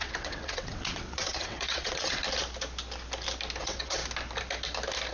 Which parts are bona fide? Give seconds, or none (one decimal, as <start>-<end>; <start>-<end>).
2.2-3.6; 4.0-5.1